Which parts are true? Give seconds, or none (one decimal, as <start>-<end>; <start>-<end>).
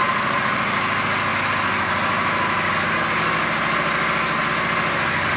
0.0-5.4